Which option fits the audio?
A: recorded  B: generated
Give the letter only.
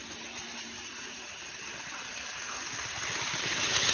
A